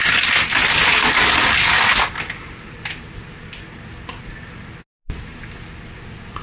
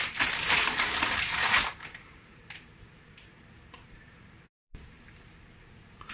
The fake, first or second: second